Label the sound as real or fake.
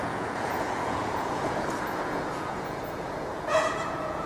fake